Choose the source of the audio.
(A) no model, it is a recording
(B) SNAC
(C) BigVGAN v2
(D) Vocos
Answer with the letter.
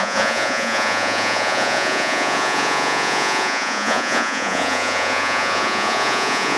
D